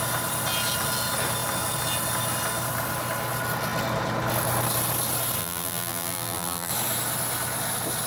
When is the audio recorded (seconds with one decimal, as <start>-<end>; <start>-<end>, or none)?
0.0-5.4; 6.7-8.1